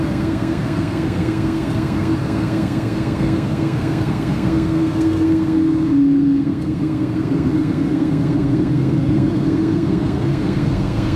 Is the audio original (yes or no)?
no